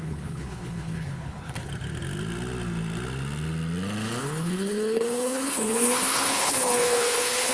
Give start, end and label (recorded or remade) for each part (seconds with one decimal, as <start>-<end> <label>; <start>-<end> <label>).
0.0-1.7 remade; 1.7-4.2 recorded; 4.2-7.5 remade